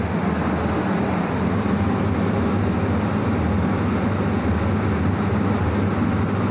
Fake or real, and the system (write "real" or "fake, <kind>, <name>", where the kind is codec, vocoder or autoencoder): real